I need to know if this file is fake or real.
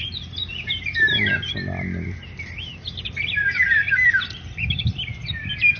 real